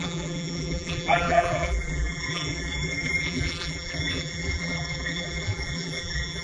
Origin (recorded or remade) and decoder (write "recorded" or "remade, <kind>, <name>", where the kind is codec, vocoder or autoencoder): remade, vocoder, BigVGAN v2